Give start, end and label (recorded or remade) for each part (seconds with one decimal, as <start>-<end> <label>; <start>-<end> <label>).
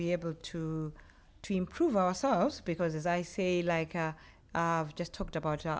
0.0-5.8 recorded